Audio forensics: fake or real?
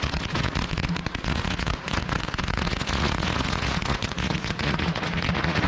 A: fake